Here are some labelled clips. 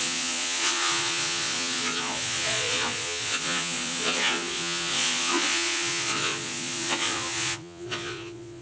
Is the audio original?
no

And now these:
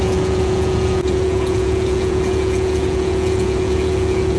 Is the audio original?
no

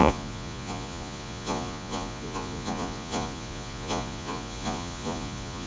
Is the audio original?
no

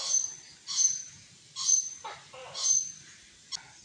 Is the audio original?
yes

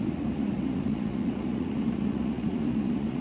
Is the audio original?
no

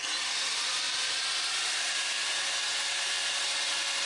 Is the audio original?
yes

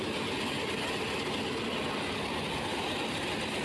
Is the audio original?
yes